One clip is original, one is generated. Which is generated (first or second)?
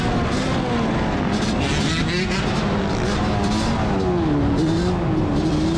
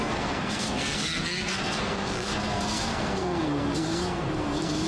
second